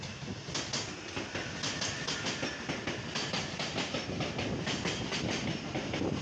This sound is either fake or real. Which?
real